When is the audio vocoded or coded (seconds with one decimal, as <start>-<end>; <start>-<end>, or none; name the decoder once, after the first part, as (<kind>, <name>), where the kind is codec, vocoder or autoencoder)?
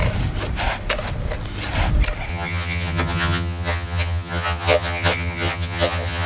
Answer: 2.3-6.3 (vocoder, HiFi-GAN)